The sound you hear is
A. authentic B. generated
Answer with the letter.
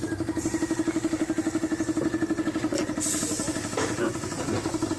A